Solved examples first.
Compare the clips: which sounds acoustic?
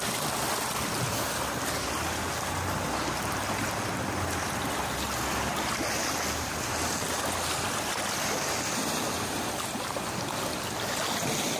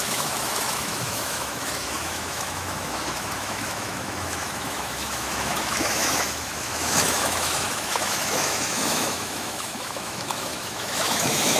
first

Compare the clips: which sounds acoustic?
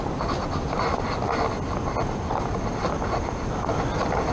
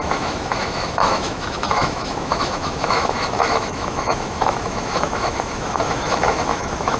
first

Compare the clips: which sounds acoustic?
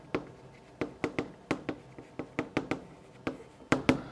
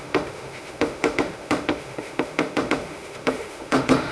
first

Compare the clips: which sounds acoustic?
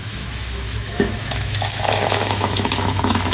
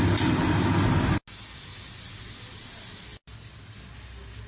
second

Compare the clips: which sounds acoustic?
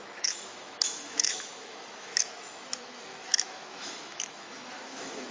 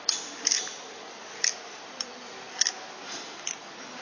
second